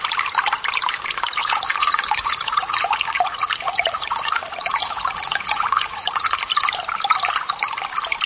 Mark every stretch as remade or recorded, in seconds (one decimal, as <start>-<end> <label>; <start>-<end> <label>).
0.0-1.4 recorded; 1.4-6.4 remade; 6.4-8.3 recorded